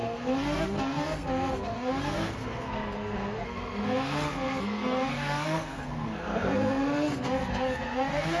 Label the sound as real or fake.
fake